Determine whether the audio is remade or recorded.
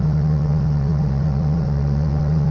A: remade